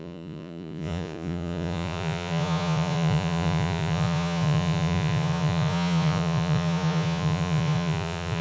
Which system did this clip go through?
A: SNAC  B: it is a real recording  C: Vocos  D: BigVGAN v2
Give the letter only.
C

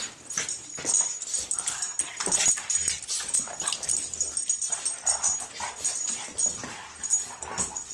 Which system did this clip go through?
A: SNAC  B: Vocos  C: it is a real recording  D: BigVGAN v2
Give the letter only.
C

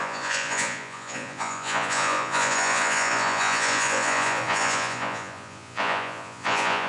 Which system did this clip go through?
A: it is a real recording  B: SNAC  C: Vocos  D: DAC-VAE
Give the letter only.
C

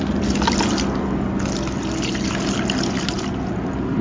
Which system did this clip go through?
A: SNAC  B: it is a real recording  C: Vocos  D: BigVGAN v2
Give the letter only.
B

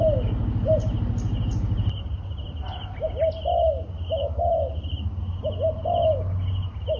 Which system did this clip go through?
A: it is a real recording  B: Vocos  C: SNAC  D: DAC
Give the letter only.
A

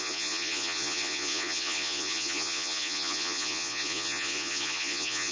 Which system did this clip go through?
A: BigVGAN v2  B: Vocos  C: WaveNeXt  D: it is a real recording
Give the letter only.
B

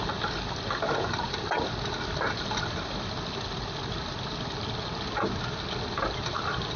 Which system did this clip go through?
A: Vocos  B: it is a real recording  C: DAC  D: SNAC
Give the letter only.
B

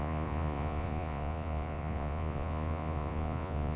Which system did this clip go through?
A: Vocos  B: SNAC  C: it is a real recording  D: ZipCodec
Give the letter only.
A